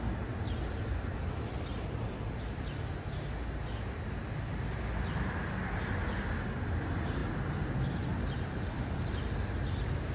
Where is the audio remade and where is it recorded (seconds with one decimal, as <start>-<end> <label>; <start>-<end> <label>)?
0.0-10.1 recorded